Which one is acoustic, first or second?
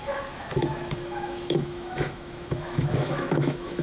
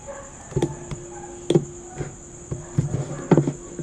second